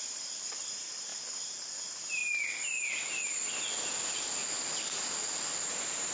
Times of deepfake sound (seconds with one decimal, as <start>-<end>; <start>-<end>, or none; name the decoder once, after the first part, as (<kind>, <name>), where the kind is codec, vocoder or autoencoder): 0.0-1.1 (vocoder, BigVGAN v2); 1.7-2.2; 5.6-6.1

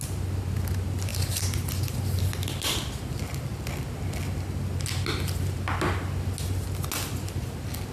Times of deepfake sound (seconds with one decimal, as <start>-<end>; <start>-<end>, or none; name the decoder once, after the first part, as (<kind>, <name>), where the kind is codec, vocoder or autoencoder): none

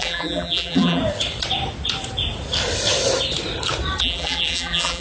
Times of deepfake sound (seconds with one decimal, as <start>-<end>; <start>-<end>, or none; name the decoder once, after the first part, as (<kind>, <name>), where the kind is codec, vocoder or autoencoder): 0.0-1.0 (vocoder, BigVGAN v2); 4.0-5.0

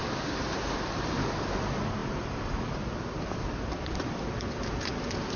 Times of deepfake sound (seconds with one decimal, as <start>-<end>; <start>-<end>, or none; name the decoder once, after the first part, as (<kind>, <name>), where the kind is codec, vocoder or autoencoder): 2.0-5.4 (vocoder, BigVGAN v2)

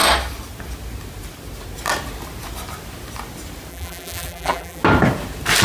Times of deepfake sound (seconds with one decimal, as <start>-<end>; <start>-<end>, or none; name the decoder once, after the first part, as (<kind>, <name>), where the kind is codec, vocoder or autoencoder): 3.7-4.8 (vocoder, BigVGAN v2)

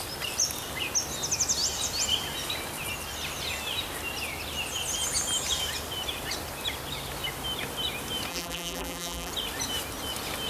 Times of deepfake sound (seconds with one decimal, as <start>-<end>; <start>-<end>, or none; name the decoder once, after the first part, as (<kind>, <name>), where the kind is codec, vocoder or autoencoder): 8.3-9.3 (vocoder, BigVGAN v2)